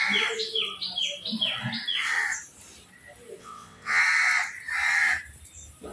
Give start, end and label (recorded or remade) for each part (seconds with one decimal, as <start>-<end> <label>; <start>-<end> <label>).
0.0-3.4 recorded; 3.4-4.0 remade; 4.0-5.9 recorded

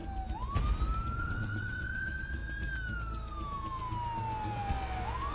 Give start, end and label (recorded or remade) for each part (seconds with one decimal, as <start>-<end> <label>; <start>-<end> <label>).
0.0-1.2 recorded; 1.2-2.4 remade; 2.4-5.3 recorded

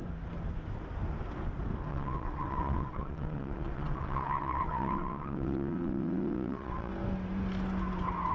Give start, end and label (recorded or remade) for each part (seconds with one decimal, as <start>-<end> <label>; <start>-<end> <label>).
0.0-1.9 recorded; 1.9-6.9 remade; 6.9-8.3 recorded